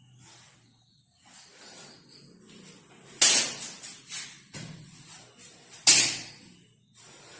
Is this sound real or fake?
real